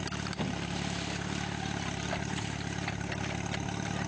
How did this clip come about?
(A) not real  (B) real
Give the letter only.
B